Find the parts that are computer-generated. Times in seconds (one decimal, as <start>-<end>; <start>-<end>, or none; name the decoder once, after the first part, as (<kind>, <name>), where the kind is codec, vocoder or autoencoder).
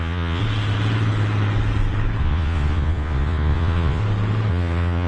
0.0-0.4 (vocoder, Vocos); 2.2-4.0; 4.5-5.1